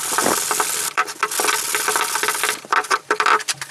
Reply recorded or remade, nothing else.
recorded